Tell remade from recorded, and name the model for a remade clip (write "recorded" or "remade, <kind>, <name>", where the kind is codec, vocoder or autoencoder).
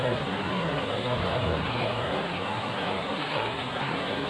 remade, codec, SNAC